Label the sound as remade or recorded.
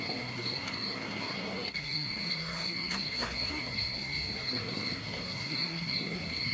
remade